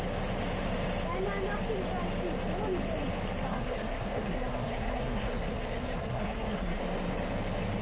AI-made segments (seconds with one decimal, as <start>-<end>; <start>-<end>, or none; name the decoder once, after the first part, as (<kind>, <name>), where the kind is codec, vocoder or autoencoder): 3.5-6.8 (codec, SNAC)